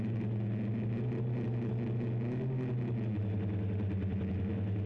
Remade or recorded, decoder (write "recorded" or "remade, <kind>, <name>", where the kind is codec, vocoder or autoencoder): recorded